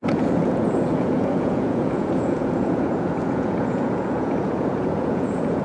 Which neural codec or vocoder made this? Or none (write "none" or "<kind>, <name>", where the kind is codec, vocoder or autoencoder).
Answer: vocoder, Vocos